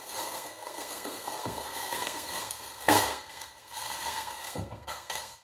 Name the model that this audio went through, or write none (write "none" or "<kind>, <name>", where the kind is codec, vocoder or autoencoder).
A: codec, SNAC